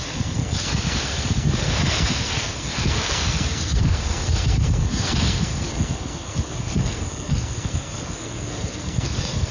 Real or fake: fake